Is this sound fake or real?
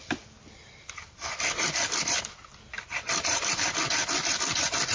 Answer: fake